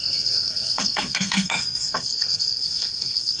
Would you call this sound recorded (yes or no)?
no